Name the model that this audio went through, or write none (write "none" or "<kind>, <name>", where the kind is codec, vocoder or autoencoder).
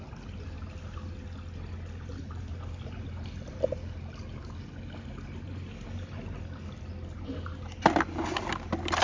none